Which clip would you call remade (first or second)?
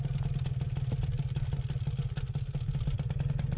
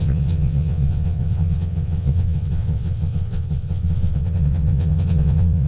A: second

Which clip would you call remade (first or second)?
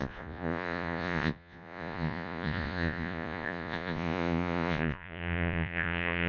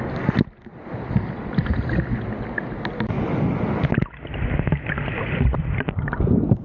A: first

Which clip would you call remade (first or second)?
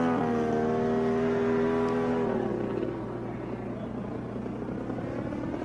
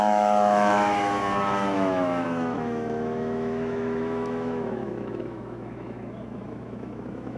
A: second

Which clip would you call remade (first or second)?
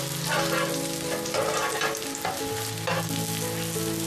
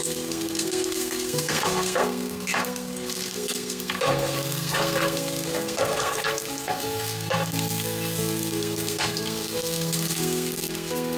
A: second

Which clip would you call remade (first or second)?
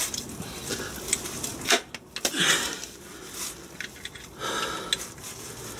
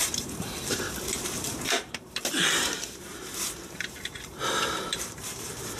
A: second